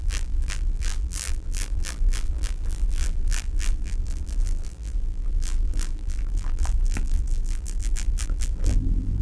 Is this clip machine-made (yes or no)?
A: yes